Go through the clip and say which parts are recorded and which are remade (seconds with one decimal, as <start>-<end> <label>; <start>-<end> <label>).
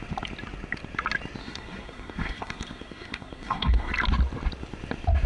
0.0-1.4 recorded; 1.4-3.9 remade; 3.9-5.3 recorded